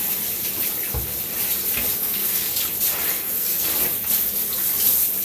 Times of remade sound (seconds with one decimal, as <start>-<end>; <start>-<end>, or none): 2.0-2.5; 3.1-3.7